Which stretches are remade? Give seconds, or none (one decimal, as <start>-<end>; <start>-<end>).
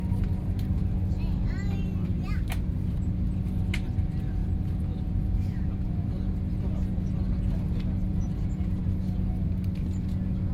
4.4-6.1; 8.1-8.8